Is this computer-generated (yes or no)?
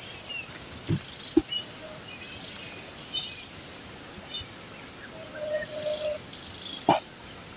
no